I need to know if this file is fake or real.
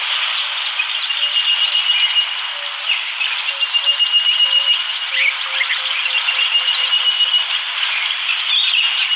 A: real